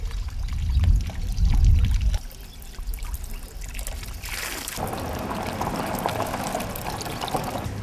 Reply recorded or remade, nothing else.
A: recorded